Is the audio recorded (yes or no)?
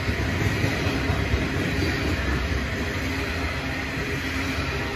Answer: yes